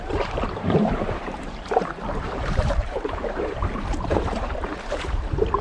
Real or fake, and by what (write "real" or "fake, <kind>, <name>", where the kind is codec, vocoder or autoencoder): fake, vocoder, BigVGAN v2